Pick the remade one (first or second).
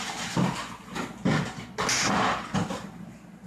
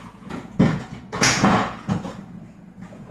second